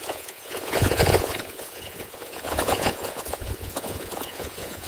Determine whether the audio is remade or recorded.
remade